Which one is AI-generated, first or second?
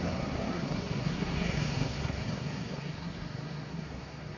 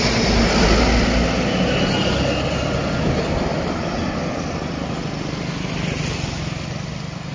first